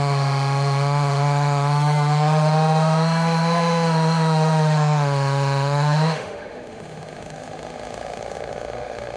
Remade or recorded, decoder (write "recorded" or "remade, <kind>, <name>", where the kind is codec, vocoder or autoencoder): remade, autoencoder, DAC-VAE